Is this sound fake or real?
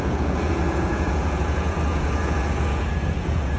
fake